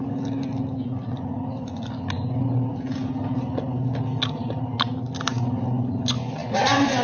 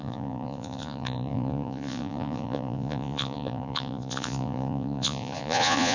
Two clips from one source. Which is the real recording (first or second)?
first